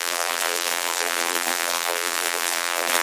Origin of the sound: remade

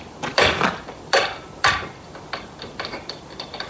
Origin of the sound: remade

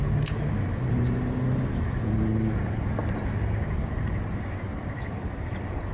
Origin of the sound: recorded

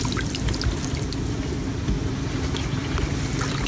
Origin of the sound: recorded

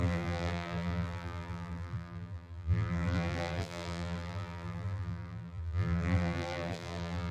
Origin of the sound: remade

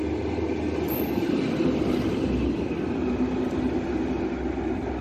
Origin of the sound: recorded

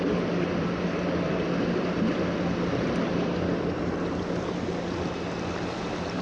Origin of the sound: recorded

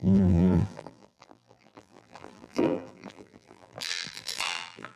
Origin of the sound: remade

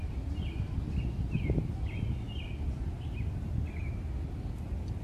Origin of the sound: recorded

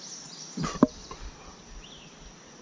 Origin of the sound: recorded